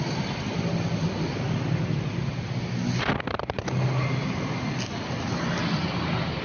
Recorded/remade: recorded